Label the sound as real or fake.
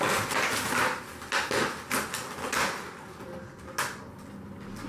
real